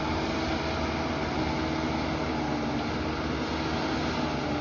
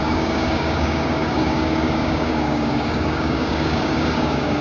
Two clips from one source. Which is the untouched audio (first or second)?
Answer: first